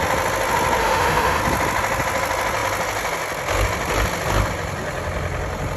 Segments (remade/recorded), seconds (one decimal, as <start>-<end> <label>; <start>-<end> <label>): 0.0-0.8 recorded; 0.8-1.4 remade; 1.4-5.8 recorded